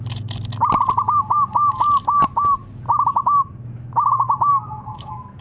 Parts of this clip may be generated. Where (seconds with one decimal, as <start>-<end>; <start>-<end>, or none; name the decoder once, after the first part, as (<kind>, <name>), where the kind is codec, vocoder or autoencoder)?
4.5-5.4 (autoencoder, DAC-VAE)